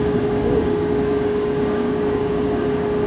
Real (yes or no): no